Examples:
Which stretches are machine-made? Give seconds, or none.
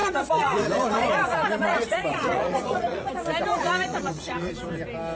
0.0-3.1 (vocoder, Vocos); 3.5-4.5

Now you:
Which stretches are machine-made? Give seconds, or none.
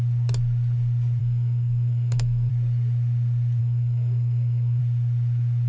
1.2-2.5 (codec, SNAC); 3.6-4.8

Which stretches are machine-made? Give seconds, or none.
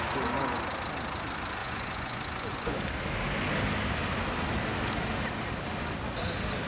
1.6-2.8 (vocoder, Vocos)